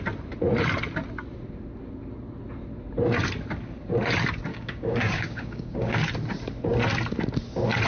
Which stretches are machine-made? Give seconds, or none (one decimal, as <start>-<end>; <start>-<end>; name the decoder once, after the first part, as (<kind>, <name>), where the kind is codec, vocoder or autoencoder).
4.5-6.0 (codec, DAC)